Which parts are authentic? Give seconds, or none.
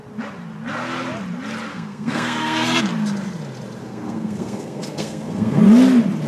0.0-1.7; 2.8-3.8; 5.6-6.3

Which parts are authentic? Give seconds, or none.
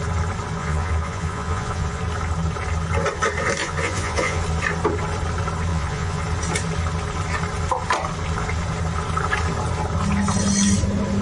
0.0-0.6; 2.0-3.6; 4.4-5.7; 6.2-11.2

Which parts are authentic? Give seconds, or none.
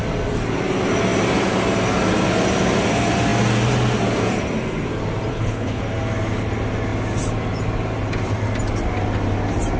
0.0-5.3; 5.8-9.8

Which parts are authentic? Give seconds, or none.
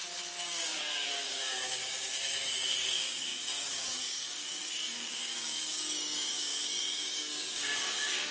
0.0-0.5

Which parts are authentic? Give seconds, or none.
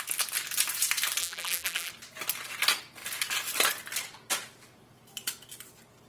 0.0-1.2; 1.9-6.1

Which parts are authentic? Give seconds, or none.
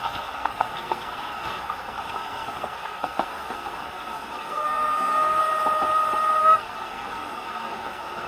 5.4-6.4